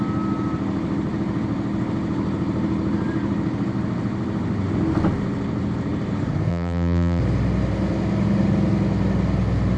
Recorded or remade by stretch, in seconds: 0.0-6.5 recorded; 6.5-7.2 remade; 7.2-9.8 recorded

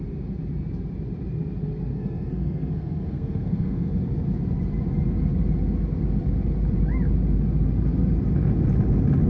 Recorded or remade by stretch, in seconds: 0.0-1.9 recorded; 1.9-3.9 remade; 3.9-9.3 recorded

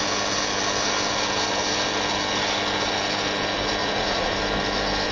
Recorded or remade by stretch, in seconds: 0.0-3.8 recorded; 3.8-4.4 remade; 4.4-5.1 recorded

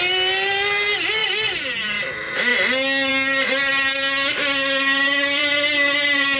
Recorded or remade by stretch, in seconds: 0.0-6.4 recorded

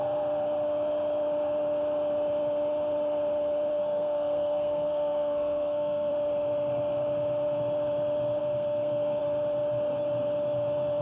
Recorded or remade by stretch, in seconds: 0.0-3.7 recorded; 3.7-6.1 remade; 6.1-8.4 recorded; 8.4-9.2 remade; 9.2-11.0 recorded